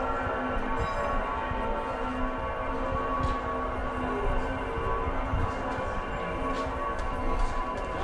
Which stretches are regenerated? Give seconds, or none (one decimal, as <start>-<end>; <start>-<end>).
none